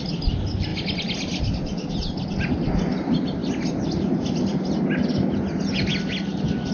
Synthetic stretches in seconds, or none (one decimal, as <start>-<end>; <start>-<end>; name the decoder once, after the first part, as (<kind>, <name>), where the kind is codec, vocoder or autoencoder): none